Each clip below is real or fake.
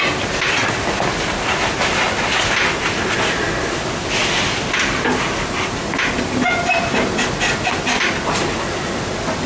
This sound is real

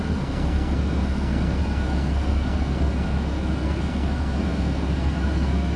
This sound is fake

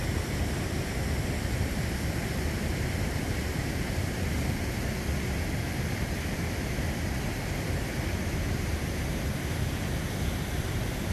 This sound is real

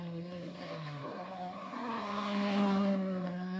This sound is fake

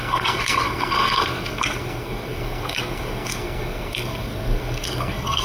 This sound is fake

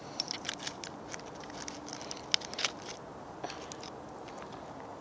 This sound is real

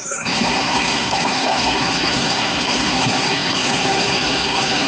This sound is fake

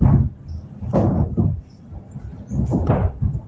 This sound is real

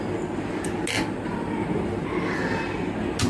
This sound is real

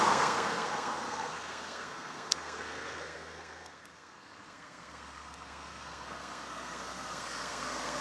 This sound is fake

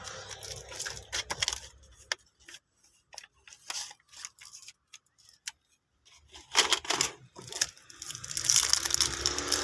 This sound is real